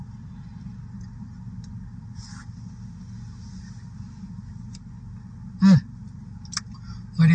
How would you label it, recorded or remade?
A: recorded